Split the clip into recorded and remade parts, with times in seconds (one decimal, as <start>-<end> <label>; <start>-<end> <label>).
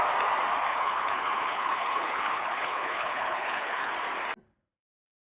0.0-0.7 recorded; 0.7-3.9 remade; 3.9-5.3 recorded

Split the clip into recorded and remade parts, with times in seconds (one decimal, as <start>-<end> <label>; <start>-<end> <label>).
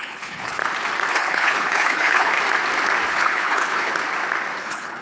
0.0-0.6 remade; 0.6-1.1 recorded; 1.1-2.3 remade; 2.3-3.1 recorded; 3.1-3.9 remade; 3.9-4.6 recorded; 4.6-5.0 remade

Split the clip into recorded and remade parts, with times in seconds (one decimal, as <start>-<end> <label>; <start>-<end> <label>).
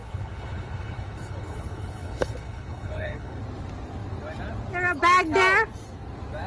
0.0-3.4 remade; 3.4-6.5 recorded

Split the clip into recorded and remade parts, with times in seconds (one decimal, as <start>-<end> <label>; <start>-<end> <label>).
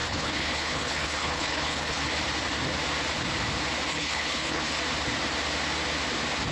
0.0-2.0 remade; 2.0-3.9 recorded; 3.9-4.8 remade; 4.8-6.5 recorded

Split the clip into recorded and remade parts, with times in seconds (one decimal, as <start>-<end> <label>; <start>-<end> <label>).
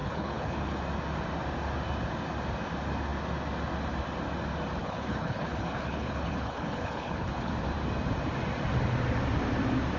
0.0-0.8 remade; 0.8-4.8 recorded; 4.8-7.5 remade; 7.5-10.0 recorded